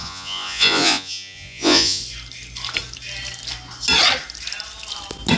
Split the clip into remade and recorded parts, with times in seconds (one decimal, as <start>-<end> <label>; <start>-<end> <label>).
0.0-2.0 remade; 2.0-5.4 recorded

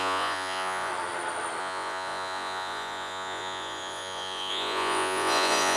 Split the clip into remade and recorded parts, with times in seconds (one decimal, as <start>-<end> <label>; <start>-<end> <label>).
0.0-0.9 remade; 0.9-1.6 recorded; 1.6-5.8 remade